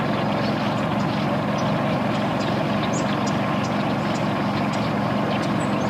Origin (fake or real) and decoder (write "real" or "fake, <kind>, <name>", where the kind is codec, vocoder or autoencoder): real